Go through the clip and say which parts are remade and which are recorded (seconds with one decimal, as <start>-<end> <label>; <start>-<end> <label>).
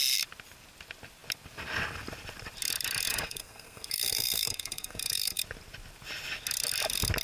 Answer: 0.0-3.1 recorded; 3.1-5.4 remade; 5.4-7.2 recorded